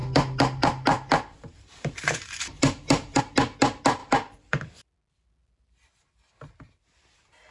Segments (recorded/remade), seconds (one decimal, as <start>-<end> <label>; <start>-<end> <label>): 0.0-3.2 remade; 3.2-4.0 recorded; 4.0-4.9 remade; 4.9-7.5 recorded